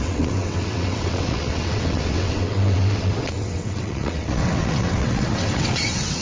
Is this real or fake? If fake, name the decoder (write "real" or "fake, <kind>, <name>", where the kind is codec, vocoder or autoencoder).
fake, vocoder, WaveNeXt